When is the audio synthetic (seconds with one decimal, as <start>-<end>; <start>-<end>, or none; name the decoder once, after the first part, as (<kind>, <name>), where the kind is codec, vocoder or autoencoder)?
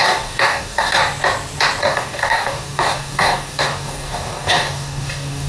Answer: 0.0-1.0 (codec, DAC); 1.8-5.5